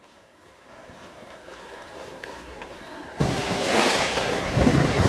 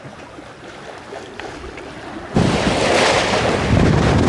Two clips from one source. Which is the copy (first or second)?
first